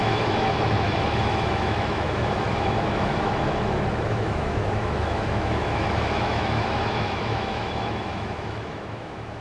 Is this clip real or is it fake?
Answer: fake